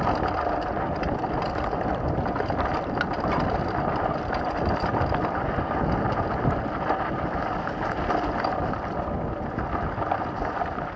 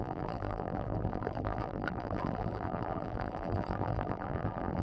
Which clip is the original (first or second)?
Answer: first